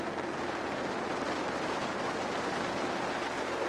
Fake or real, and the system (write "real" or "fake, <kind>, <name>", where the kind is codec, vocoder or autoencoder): fake, vocoder, BigVGAN v2